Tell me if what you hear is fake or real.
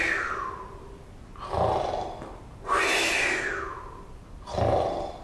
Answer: real